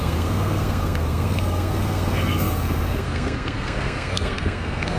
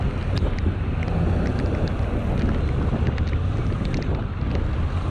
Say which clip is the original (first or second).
second